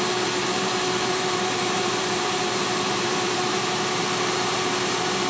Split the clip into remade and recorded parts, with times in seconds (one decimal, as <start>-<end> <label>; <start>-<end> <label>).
0.0-0.4 recorded; 0.4-3.6 remade; 3.6-5.3 recorded